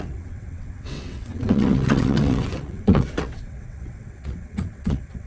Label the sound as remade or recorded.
remade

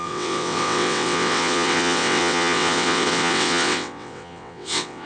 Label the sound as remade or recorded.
remade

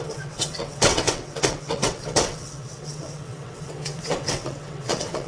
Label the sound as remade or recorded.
remade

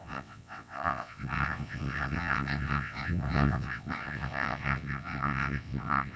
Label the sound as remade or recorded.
remade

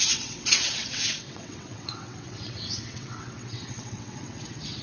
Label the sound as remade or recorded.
remade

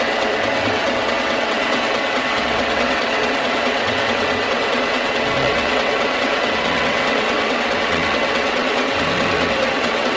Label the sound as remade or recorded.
remade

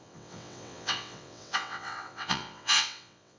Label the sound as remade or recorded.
remade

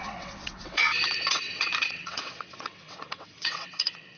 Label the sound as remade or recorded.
remade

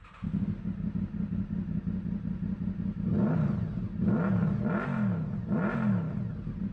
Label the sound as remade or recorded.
recorded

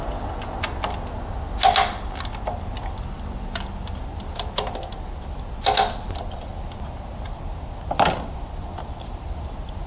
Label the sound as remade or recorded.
recorded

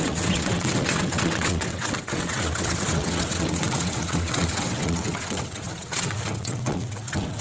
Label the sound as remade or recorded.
remade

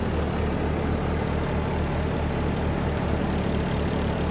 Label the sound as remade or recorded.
recorded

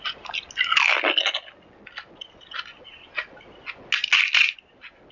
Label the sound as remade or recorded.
recorded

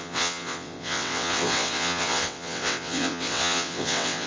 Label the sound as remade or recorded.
remade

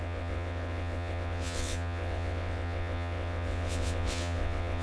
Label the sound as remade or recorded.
remade